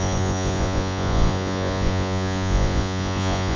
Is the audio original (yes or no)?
no